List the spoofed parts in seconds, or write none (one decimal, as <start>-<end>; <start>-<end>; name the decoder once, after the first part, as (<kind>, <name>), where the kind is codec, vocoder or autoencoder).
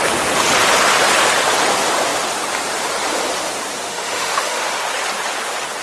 3.8-4.8 (autoencoder, DAC-VAE)